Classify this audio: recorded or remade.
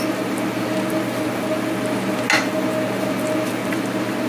recorded